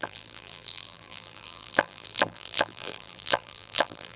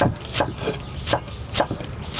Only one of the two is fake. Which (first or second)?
first